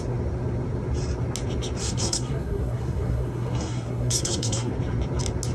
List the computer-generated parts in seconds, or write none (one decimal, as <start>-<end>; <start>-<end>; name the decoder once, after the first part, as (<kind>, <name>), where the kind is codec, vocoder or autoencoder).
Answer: 1.8-4.7 (codec, SNAC)